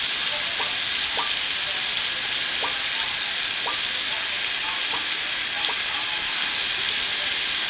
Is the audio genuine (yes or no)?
yes